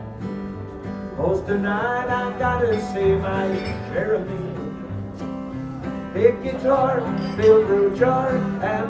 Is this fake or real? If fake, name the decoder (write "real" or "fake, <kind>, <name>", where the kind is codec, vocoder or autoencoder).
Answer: real